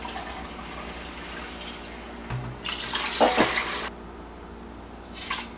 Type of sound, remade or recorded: recorded